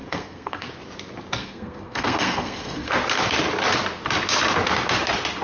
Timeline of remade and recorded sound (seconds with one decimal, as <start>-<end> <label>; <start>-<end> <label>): 0.0-0.7 remade; 0.7-1.4 recorded; 1.4-2.9 remade; 2.9-5.4 recorded